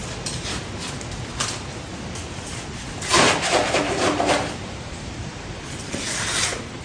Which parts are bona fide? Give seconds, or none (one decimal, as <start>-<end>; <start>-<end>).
0.0-3.1